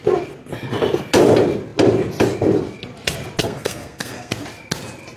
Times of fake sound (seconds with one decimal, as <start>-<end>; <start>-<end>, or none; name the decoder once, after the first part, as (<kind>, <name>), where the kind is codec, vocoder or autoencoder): 3.4-4.3 (codec, SNAC)